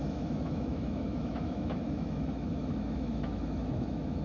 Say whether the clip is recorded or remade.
remade